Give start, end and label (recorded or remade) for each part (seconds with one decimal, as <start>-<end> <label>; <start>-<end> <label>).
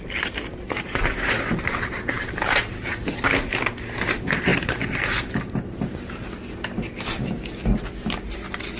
0.0-4.5 recorded; 4.5-6.4 remade; 6.4-8.8 recorded